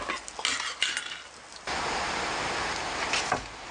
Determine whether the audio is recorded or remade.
recorded